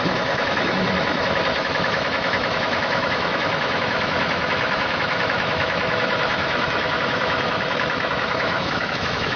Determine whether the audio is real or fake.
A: fake